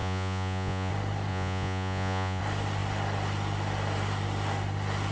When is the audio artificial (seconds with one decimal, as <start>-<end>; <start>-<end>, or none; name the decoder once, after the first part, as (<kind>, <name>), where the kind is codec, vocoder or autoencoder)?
0.0-0.9 (vocoder, Vocos); 1.3-2.4